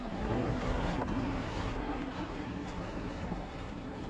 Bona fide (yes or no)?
no